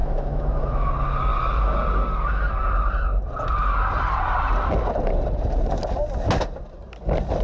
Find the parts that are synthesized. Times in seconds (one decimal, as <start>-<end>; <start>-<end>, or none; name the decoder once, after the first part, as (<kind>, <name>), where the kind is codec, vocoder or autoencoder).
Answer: 0.0-0.9 (autoencoder, DAC-VAE)